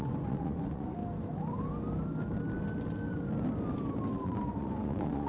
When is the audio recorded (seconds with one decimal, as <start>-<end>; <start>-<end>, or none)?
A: 1.0-4.2

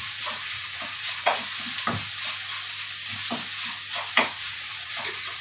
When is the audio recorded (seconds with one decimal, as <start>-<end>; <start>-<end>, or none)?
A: 1.3-4.1

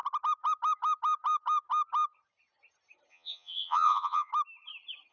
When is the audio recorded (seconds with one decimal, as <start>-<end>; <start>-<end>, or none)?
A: 0.0-3.1; 4.3-5.1